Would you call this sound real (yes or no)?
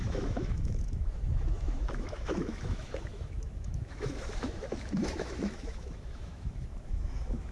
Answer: no